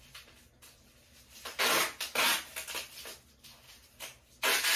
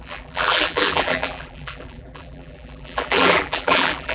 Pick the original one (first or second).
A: first